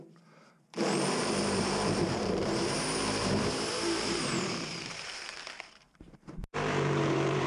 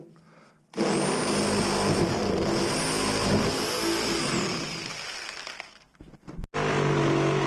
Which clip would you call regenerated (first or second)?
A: first